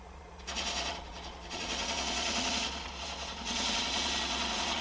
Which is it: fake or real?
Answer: fake